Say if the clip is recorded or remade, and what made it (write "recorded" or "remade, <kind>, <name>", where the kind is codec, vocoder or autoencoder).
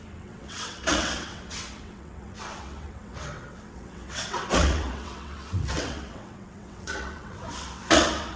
remade, vocoder, WaveNeXt